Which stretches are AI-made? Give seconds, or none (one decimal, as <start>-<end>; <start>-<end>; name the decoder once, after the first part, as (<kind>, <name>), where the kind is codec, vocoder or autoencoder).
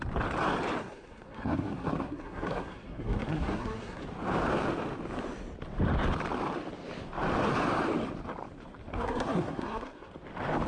0.8-4.0 (codec, SNAC); 8.9-10.1